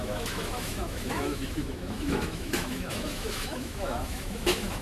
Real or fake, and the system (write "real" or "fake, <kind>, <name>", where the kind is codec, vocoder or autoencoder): fake, autoencoder, DAC-VAE